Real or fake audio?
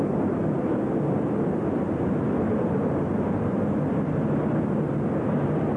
real